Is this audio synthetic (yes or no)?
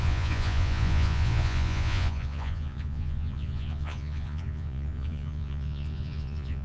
yes